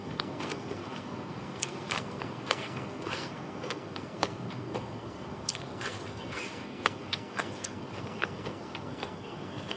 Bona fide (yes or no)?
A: no